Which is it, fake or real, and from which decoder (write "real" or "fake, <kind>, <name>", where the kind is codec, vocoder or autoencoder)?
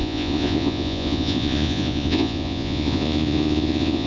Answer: fake, vocoder, Vocos